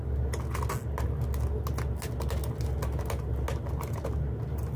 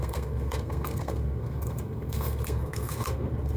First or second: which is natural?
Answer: first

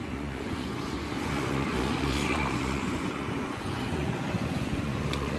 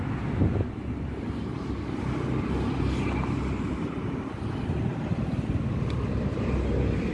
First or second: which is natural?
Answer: second